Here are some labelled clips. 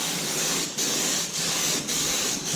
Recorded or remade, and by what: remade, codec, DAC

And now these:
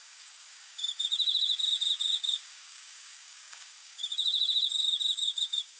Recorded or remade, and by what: remade, codec, DAC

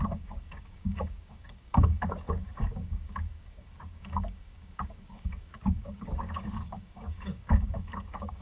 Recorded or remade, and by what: remade, codec, DAC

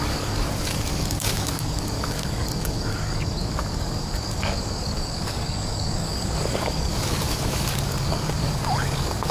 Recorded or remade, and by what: remade, codec, DAC